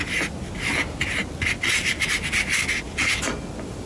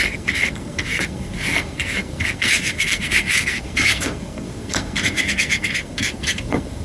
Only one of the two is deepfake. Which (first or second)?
second